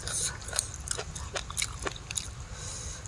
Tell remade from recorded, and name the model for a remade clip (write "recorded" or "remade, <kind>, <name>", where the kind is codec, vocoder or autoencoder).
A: recorded